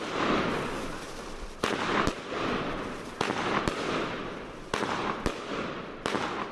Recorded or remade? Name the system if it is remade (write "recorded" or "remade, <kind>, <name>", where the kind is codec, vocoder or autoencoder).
recorded